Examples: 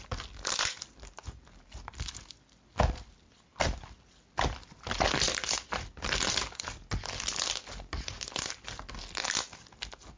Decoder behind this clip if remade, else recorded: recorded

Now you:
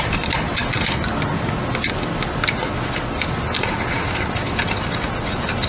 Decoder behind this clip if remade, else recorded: recorded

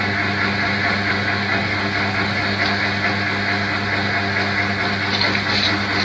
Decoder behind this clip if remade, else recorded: recorded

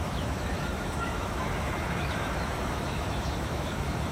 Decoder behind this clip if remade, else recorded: remade, autoencoder, DAC-VAE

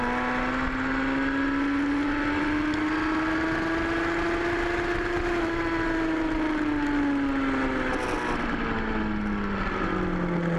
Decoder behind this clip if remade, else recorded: recorded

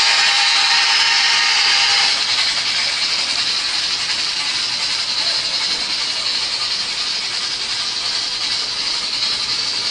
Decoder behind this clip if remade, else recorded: recorded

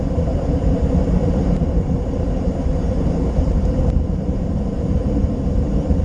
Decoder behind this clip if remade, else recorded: remade, vocoder, BigVGAN v2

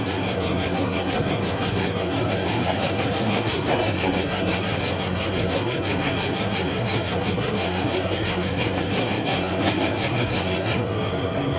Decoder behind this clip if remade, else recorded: remade, codec, SNAC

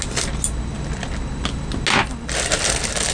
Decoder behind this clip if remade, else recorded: recorded